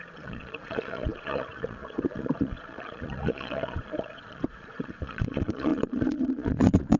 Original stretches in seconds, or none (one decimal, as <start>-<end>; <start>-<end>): none